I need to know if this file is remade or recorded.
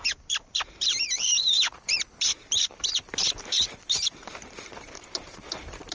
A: remade